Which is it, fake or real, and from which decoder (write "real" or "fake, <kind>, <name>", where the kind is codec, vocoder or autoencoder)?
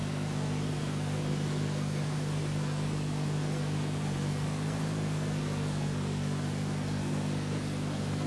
fake, codec, SNAC